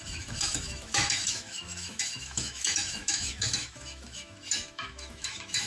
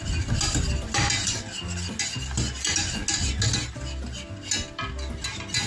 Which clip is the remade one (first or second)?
first